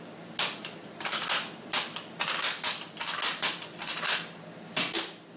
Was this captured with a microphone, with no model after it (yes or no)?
yes